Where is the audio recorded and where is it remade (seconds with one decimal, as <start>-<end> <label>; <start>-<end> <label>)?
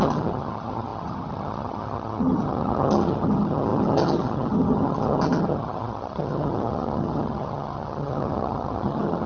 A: 0.0-9.3 remade